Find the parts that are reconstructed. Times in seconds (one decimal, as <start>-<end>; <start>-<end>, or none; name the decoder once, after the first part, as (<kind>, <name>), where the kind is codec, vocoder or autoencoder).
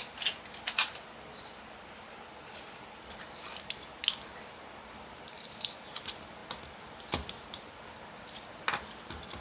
none